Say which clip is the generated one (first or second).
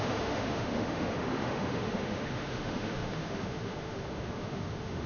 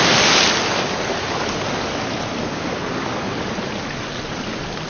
first